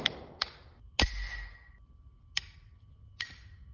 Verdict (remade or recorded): recorded